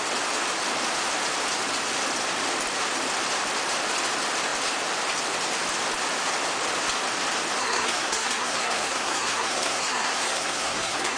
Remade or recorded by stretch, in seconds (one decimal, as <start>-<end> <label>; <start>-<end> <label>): 0.0-7.6 recorded; 7.6-11.2 remade